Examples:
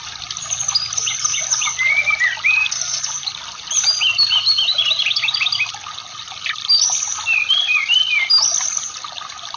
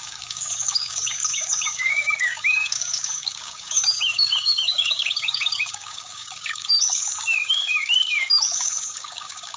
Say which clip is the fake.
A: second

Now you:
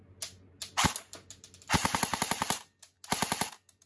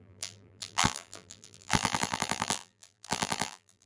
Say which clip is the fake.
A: second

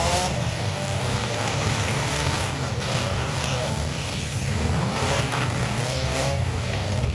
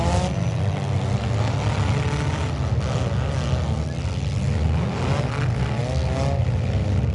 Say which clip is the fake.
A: first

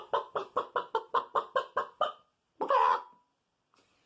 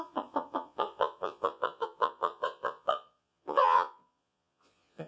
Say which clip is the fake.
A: second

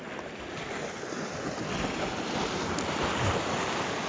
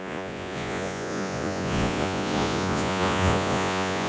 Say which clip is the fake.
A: second